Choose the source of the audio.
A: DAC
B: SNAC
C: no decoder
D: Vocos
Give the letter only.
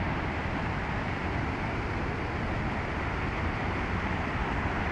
C